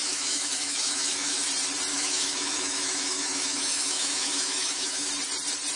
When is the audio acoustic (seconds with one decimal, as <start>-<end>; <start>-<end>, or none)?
1.5-1.9; 5.1-5.8

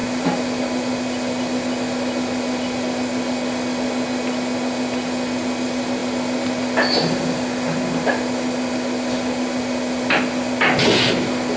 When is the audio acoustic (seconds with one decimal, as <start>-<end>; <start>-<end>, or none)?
0.0-11.6

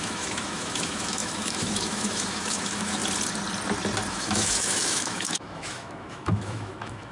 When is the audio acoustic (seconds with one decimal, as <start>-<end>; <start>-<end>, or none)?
3.0-4.1

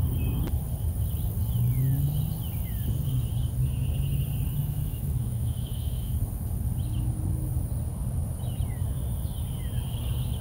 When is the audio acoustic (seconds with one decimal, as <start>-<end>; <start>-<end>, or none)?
0.0-4.6; 6.1-10.4

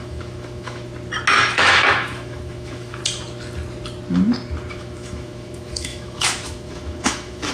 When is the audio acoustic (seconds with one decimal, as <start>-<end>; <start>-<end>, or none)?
0.9-1.4; 3.0-4.7